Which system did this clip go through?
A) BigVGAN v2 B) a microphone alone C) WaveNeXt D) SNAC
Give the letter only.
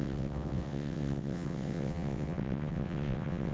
C